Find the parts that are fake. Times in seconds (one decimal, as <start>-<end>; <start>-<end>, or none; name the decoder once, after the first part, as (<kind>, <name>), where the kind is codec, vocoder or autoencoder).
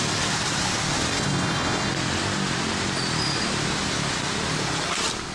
1.1-1.9 (codec, HILCodec)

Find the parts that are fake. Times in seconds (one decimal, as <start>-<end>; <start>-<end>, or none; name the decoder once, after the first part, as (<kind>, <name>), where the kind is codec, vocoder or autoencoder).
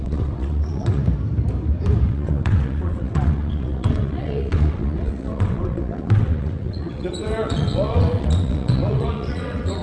0.0-1.0 (vocoder, WaveNeXt); 2.1-9.8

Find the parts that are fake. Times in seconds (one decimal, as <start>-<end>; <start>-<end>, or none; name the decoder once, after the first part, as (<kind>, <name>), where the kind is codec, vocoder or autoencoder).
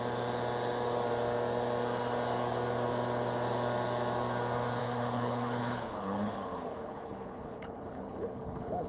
4.8-8.9 (codec, HILCodec)